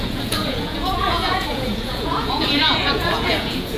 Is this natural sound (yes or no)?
no